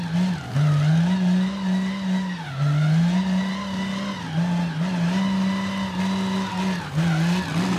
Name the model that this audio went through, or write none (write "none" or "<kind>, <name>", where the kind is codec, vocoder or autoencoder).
none